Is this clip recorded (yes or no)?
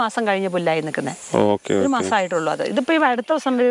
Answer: yes